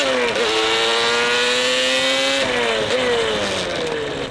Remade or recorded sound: recorded